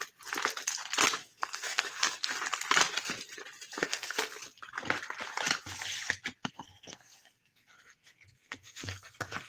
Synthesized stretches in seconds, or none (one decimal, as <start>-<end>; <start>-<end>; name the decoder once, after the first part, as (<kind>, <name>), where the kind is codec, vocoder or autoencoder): 1.2-2.3 (codec, SNAC); 3.8-4.3; 6.4-9.5

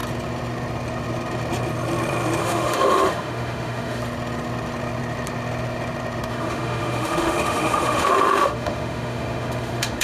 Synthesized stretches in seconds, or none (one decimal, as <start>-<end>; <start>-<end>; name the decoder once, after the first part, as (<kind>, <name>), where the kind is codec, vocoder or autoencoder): 2.4-4.0 (autoencoder, DAC-VAE); 6.3-10.0

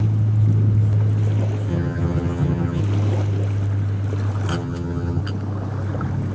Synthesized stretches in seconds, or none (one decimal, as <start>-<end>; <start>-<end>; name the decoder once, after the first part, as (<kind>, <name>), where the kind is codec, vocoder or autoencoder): 1.7-2.8 (vocoder, HiFi-GAN); 4.5-5.2

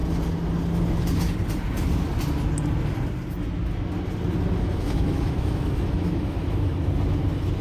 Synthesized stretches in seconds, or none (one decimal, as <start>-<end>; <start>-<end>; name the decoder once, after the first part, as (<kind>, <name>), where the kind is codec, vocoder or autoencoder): 4.6-6.7 (autoencoder, DAC-VAE)

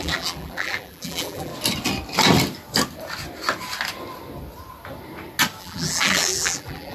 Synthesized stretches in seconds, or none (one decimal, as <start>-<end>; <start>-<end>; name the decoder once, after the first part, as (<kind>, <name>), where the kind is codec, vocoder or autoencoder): 0.0-1.5 (vocoder, BigVGAN v2); 5.6-6.9

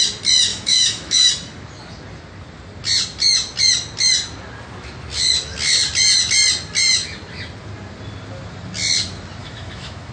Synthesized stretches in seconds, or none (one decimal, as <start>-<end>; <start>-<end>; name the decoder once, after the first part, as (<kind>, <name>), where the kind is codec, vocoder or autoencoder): 0.5-1.3 (autoencoder, DAC-VAE); 9.4-10.1

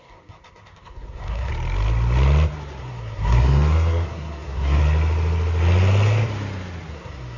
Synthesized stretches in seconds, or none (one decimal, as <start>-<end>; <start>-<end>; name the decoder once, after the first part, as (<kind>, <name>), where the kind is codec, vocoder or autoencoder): 0.0-1.5 (codec, SNAC); 2.8-4.8; 6.9-7.4